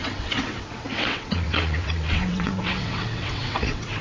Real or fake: fake